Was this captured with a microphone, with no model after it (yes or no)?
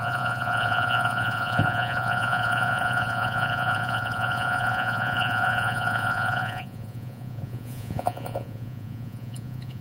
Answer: no